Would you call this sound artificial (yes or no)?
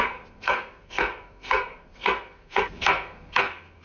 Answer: yes